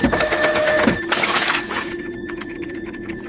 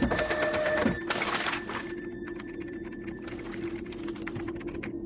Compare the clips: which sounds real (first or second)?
second